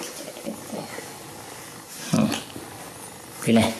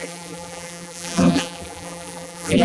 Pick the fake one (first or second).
second